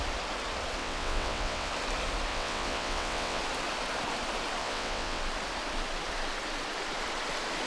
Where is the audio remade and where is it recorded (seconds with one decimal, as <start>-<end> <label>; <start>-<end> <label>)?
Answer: 0.0-0.8 recorded; 0.8-1.7 remade; 1.7-2.3 recorded; 2.3-3.4 remade; 3.4-4.6 recorded; 4.6-5.2 remade; 5.2-7.7 recorded